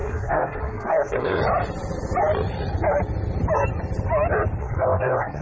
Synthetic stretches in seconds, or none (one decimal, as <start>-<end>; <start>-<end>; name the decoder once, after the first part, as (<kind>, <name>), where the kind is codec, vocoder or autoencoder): 0.0-1.4 (codec, SNAC); 4.6-5.4